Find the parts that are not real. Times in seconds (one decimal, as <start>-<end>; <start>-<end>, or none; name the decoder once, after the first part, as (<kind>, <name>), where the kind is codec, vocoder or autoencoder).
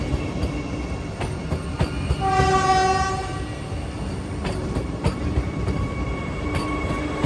5.2-7.3 (vocoder, BigVGAN v2)